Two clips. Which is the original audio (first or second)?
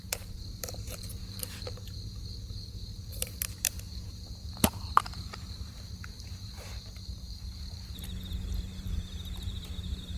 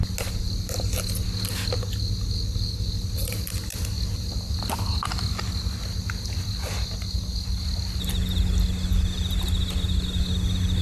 second